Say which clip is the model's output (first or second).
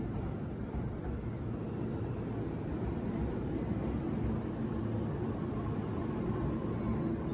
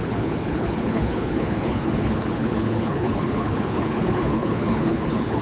second